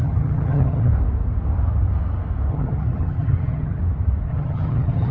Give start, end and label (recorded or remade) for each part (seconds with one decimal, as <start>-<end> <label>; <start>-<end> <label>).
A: 0.0-0.9 remade; 0.9-2.5 recorded; 2.5-3.8 remade; 3.8-4.3 recorded; 4.3-5.1 remade